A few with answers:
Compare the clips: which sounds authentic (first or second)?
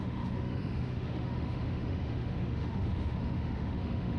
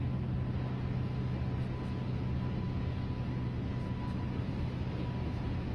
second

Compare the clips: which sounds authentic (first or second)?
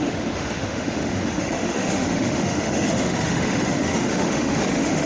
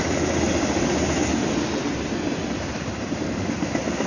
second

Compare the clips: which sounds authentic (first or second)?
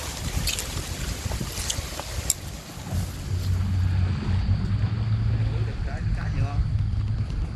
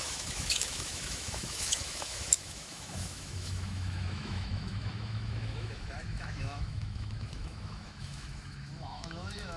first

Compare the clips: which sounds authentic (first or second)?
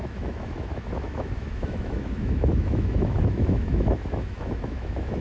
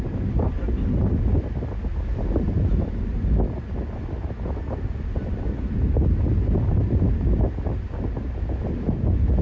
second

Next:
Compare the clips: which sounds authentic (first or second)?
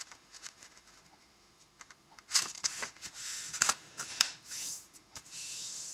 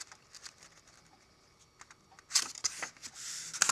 second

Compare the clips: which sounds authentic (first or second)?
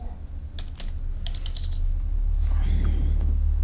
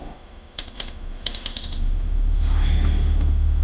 first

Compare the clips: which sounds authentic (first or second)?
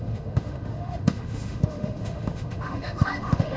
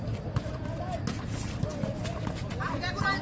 second